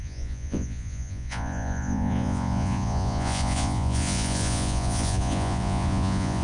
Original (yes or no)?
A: no